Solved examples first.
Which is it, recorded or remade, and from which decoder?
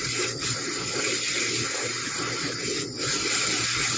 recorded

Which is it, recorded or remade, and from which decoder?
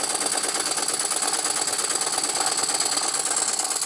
recorded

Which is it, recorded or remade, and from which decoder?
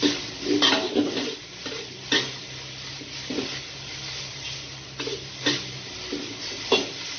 recorded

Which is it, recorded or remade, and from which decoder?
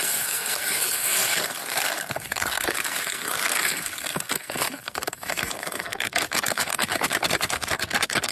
remade, codec, SNAC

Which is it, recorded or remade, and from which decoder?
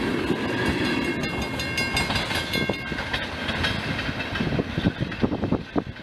recorded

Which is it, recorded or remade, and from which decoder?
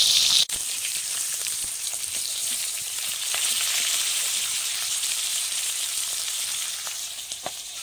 remade, vocoder, BigVGAN v2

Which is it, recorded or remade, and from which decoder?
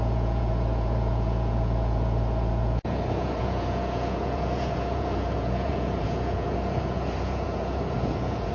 remade, vocoder, Vocos